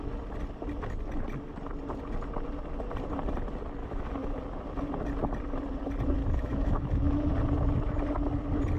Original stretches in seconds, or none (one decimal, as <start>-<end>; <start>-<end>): 0.0-3.8; 4.4-6.2; 7.3-8.8